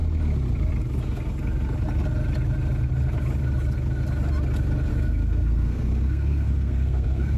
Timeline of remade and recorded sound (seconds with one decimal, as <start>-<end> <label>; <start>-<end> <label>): 0.0-4.9 recorded; 4.9-7.4 remade